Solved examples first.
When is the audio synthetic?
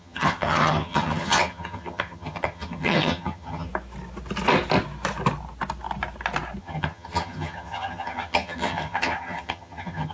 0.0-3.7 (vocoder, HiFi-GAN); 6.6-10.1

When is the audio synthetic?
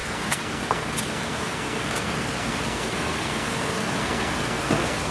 0.0-5.1 (codec, SNAC)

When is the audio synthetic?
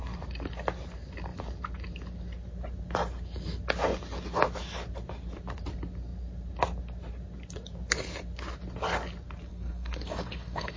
9.5-10.8 (codec, SNAC)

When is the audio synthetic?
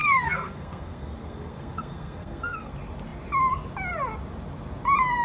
0.0-2.7 (codec, SNAC)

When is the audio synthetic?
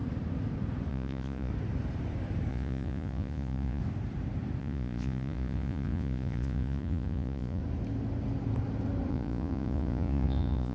0.9-1.5 (vocoder, Vocos); 2.5-3.8; 4.6-7.6; 9.1-10.7